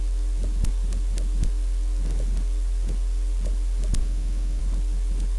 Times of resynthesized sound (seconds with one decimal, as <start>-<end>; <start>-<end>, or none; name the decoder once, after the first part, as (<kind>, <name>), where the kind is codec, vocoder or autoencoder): 4.0-4.6 (autoencoder, DAC-VAE)